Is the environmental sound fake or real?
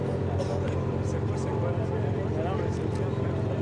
real